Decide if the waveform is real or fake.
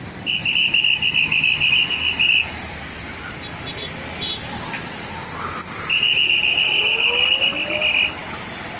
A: real